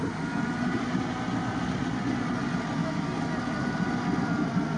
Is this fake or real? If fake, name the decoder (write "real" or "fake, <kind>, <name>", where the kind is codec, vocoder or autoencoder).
real